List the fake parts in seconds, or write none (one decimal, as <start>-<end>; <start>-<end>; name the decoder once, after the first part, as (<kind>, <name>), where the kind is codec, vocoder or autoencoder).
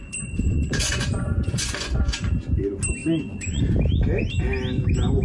0.0-2.3 (vocoder, Vocos); 3.0-3.6